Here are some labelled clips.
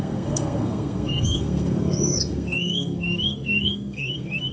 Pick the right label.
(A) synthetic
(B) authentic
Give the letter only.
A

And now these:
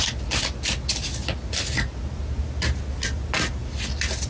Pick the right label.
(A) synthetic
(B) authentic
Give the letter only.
B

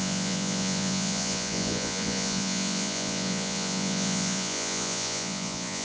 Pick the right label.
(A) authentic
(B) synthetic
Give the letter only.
B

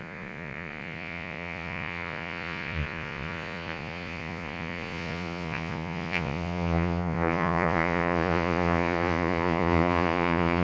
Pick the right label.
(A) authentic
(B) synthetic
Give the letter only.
B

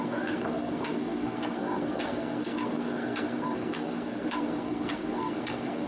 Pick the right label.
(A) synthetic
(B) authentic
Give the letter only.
A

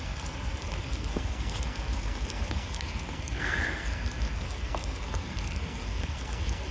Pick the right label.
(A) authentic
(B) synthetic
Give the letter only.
B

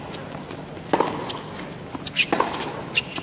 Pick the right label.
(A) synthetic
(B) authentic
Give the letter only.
B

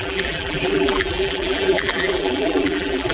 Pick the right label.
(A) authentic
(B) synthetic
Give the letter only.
B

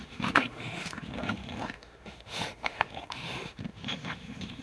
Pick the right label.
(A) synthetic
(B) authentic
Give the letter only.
A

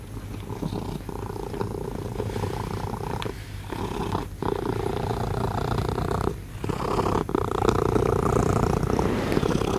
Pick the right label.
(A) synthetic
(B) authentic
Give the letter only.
B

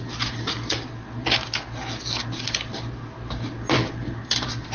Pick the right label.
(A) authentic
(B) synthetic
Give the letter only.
A